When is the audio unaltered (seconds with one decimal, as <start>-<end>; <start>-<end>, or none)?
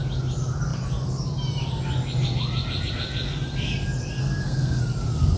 0.0-4.2; 4.8-5.4